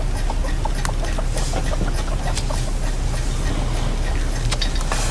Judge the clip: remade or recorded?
recorded